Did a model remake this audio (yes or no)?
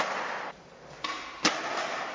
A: no